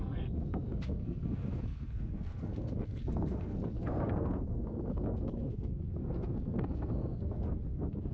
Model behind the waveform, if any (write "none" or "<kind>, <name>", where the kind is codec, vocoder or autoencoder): codec, SNAC